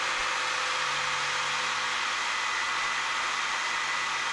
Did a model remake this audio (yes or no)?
no